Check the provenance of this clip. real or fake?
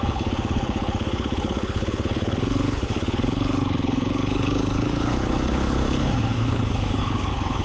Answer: fake